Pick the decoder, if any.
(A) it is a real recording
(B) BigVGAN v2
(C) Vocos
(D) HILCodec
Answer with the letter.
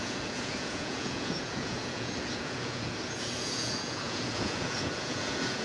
C